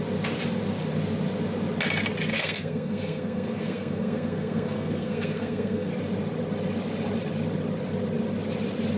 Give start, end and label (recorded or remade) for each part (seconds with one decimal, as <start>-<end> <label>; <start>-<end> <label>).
0.0-2.3 recorded; 2.3-5.9 remade; 5.9-9.0 recorded